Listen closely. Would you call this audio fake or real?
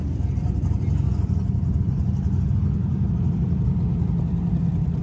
real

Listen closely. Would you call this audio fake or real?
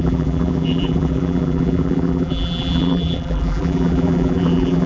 fake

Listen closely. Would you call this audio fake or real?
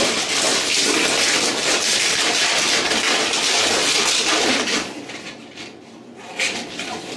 fake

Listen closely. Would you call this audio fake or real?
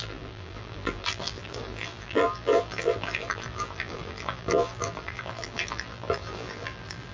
fake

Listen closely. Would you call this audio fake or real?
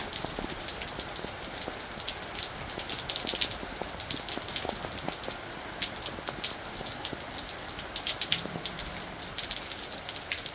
real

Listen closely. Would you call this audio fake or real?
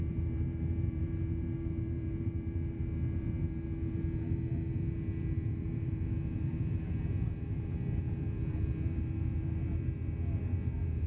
fake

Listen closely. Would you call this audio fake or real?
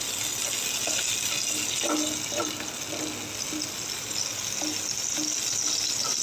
real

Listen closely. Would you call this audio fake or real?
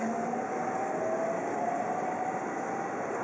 real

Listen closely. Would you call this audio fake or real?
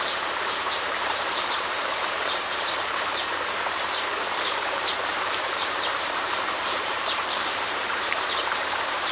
fake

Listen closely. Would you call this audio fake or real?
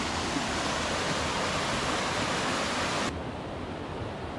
real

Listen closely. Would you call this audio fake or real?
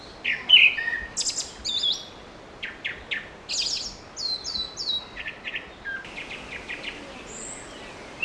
real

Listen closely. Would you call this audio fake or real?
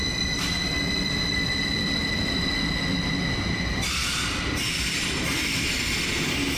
real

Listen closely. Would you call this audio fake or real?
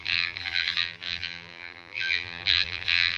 fake